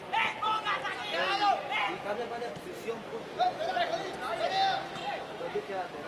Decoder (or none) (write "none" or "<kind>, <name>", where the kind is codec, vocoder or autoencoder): none